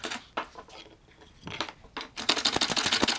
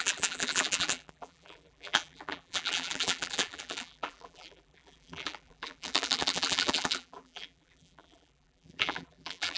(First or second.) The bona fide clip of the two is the first